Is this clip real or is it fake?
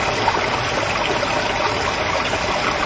real